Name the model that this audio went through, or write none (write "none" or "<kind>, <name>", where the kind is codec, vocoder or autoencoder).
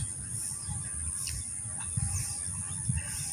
none